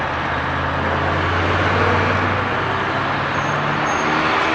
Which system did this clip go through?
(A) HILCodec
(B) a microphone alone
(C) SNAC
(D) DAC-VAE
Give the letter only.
B